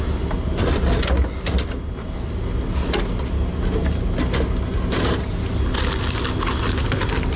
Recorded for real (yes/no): yes